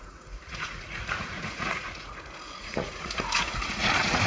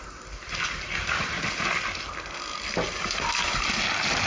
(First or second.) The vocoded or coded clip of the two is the first